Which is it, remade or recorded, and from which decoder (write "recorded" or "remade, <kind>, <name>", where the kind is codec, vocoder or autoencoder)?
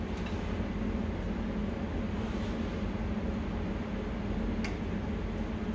recorded